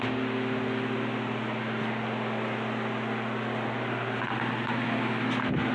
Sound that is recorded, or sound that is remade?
recorded